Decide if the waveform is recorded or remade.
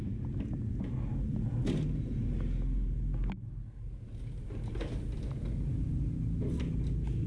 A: recorded